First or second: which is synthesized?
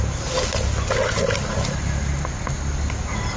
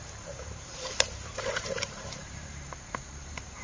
second